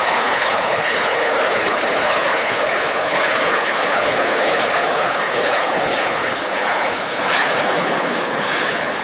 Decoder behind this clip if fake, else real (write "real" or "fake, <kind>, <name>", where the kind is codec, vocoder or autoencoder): fake, codec, HILCodec